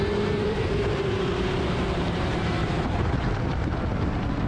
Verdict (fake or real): fake